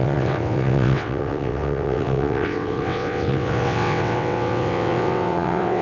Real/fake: fake